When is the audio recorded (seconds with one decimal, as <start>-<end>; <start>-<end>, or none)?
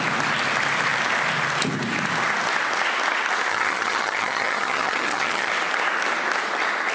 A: 0.0-3.5; 5.5-6.9